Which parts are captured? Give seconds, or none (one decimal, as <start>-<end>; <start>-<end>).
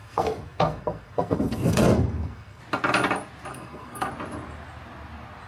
2.6-3.5; 4.1-5.5